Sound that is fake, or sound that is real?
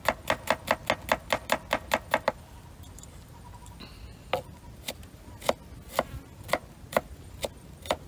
real